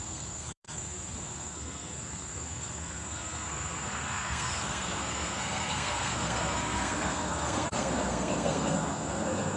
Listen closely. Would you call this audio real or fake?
fake